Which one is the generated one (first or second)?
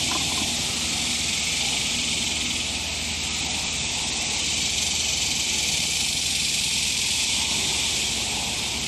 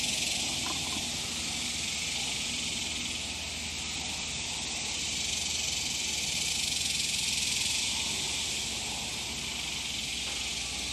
first